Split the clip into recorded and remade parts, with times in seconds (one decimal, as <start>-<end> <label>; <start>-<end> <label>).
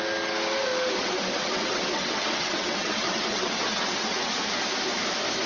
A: 0.0-1.0 recorded; 1.0-4.3 remade; 4.3-5.5 recorded